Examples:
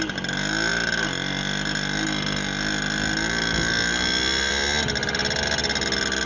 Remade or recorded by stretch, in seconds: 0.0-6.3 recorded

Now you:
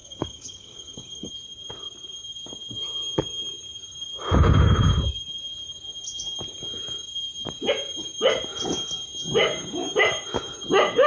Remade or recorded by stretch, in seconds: 0.0-1.3 remade; 1.3-11.1 recorded